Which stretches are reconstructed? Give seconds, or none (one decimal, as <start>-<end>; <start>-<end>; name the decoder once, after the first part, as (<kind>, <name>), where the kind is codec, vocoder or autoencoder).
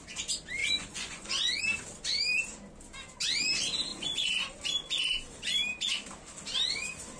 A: 0.6-1.6 (vocoder, Vocos); 3.9-4.6